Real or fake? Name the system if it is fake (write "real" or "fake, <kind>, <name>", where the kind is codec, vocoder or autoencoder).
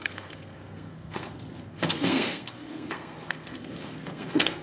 fake, codec, SNAC